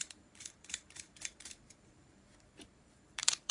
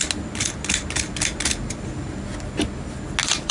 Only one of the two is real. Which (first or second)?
second